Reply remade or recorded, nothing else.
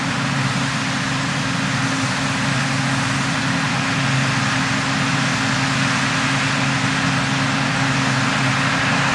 recorded